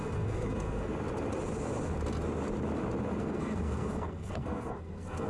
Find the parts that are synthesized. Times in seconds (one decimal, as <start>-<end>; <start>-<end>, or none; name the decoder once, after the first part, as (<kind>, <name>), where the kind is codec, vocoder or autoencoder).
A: 0.0-0.9 (codec, SNAC); 3.2-5.3